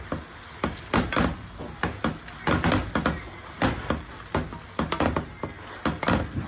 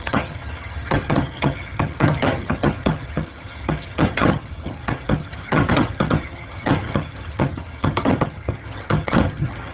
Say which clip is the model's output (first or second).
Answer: second